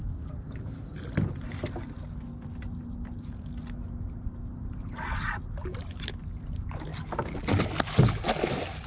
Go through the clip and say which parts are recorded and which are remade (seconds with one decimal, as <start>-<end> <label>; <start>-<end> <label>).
0.0-8.9 recorded